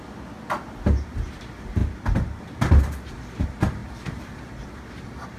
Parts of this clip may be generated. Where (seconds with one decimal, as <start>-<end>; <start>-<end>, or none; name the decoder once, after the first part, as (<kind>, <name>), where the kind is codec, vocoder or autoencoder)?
1.8-2.4 (vocoder, BigVGAN v2); 3.8-4.7